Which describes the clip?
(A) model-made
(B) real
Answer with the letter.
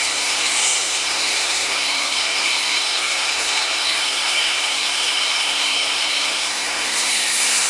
A